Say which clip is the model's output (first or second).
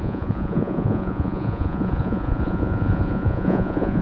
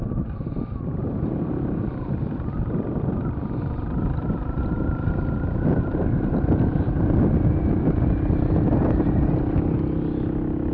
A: first